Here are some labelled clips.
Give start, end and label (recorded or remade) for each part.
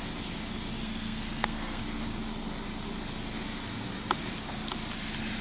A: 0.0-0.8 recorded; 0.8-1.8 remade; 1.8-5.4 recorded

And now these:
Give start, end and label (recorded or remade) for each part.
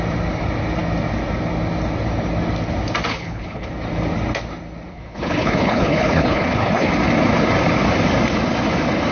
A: 0.0-3.1 recorded; 3.1-3.7 remade; 3.7-4.9 recorded; 4.9-6.9 remade; 6.9-9.1 recorded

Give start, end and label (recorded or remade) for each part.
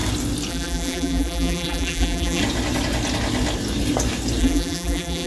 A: 0.0-0.5 recorded; 0.5-2.4 remade; 2.4-4.4 recorded; 4.4-5.3 remade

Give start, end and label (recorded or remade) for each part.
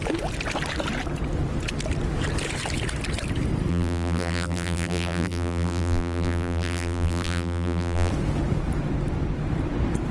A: 0.0-3.7 recorded; 3.7-8.1 remade; 8.1-10.1 recorded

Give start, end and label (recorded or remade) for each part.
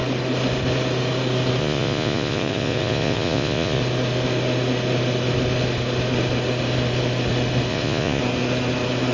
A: 0.0-1.6 recorded; 1.6-3.8 remade; 3.8-7.7 recorded; 7.7-8.2 remade; 8.2-9.1 recorded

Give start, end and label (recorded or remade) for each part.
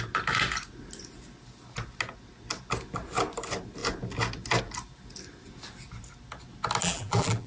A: 0.0-6.8 recorded; 6.8-7.5 remade